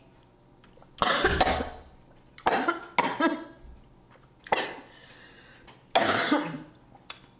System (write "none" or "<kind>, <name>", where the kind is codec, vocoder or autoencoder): none